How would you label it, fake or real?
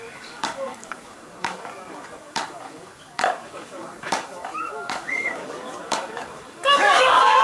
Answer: fake